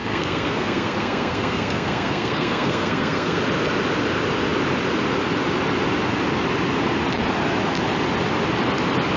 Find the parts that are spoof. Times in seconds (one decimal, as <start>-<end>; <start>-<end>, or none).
0.0-3.4